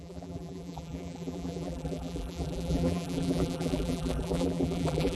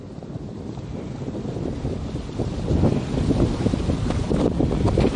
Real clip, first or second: second